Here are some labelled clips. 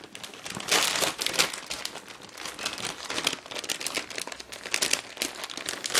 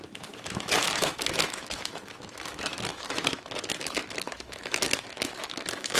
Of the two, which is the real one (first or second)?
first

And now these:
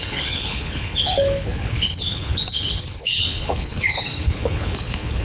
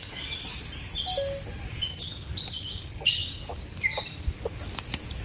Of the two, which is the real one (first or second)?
second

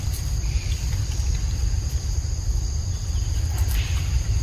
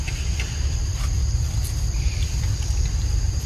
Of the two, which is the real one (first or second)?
second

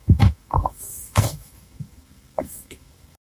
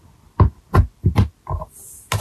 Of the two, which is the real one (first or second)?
second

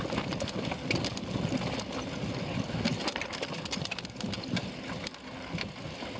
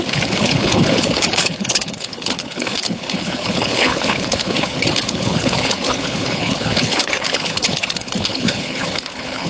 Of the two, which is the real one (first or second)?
first